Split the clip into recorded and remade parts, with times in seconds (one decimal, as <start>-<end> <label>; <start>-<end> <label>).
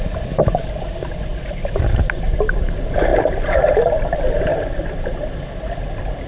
0.0-6.3 recorded